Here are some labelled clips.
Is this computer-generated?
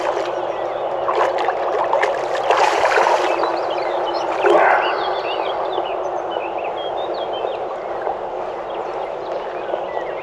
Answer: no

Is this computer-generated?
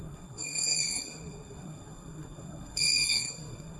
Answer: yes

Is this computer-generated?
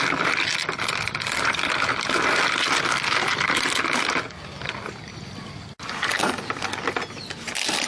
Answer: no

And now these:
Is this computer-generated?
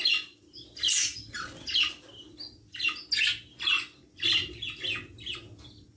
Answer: no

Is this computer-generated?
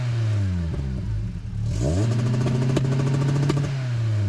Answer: no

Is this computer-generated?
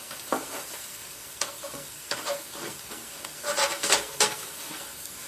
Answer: yes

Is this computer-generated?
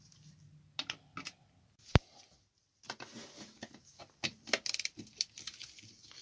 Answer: no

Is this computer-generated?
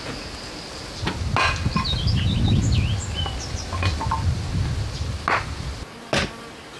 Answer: no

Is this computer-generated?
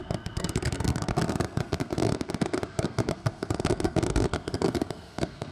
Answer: yes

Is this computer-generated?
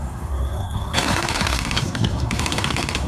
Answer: yes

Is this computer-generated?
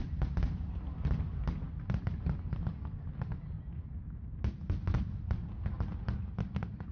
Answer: no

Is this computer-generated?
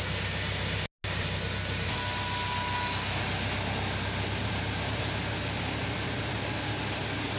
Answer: no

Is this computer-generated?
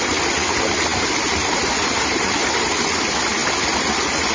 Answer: no